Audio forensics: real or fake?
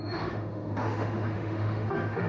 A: fake